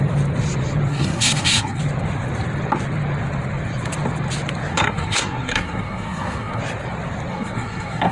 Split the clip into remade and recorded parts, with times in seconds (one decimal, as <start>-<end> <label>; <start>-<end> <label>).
0.0-0.9 recorded; 0.9-1.8 remade; 1.8-4.7 recorded; 4.7-6.6 remade; 6.6-7.3 recorded; 7.3-8.1 remade